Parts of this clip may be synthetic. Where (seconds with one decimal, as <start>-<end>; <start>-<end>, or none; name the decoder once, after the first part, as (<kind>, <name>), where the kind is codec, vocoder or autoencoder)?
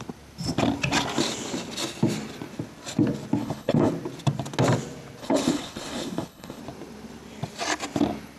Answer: 3.4-3.9 (codec, HILCodec); 5.2-6.6